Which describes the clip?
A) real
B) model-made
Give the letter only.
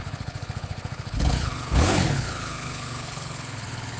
B